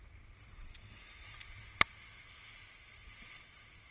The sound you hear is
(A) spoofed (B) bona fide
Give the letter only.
B